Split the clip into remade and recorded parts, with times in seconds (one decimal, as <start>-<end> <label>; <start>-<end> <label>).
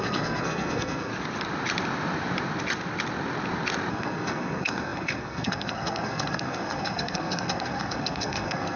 0.0-1.1 remade; 1.1-3.9 recorded; 3.9-8.8 remade